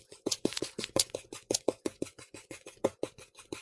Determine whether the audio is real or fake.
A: fake